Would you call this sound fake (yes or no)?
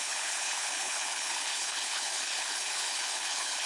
yes